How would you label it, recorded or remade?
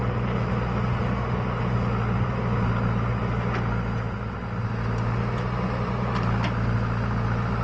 recorded